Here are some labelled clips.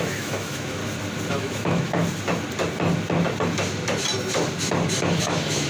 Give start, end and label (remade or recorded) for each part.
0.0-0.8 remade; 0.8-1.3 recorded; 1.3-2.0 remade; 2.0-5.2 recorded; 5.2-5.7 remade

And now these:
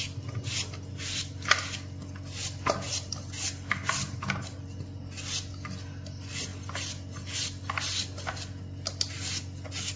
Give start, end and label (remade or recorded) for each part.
0.0-10.0 recorded